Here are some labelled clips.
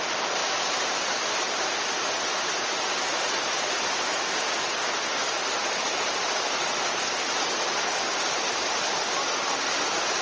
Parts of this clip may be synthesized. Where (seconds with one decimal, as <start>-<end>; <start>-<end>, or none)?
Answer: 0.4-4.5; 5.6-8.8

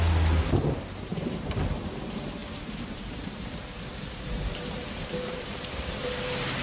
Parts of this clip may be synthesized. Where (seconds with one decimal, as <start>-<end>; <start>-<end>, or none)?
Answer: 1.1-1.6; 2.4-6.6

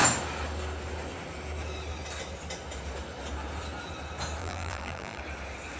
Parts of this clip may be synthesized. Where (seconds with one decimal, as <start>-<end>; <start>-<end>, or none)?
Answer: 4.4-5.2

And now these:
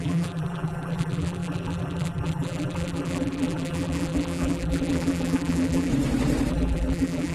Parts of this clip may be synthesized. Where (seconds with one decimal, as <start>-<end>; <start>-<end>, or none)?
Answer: 0.0-5.9; 6.5-7.3

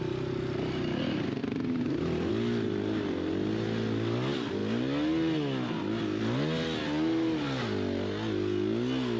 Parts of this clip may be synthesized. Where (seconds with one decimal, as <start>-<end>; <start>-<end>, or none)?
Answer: none

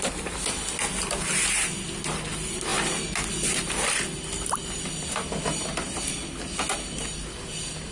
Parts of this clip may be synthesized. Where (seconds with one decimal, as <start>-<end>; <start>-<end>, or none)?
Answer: none

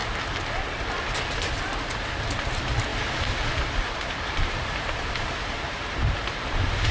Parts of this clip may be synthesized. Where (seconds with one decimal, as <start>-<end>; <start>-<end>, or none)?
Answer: 1.1-2.9; 3.5-6.9

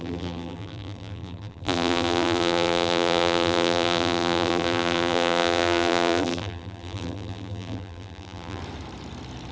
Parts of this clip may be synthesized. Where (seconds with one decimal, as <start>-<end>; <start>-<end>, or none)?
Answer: 0.0-8.6